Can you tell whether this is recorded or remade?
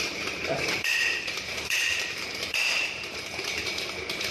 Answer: remade